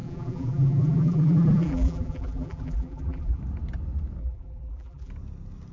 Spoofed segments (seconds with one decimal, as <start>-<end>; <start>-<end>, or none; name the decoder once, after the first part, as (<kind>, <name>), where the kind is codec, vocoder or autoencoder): 0.0-3.4 (vocoder, BigVGAN v2); 4.2-5.1